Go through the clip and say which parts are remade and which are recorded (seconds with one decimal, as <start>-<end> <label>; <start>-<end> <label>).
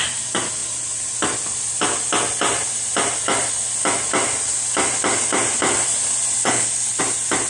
0.0-6.4 recorded; 6.4-7.0 remade; 7.0-7.5 recorded